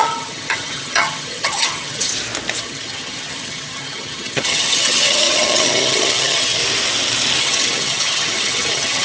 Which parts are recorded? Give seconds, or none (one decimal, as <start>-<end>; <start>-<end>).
2.1-2.6; 6.6-7.4